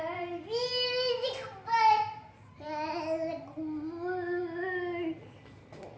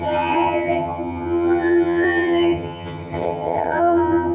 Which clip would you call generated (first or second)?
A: second